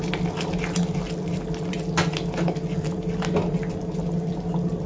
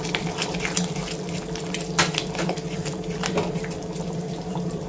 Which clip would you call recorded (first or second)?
first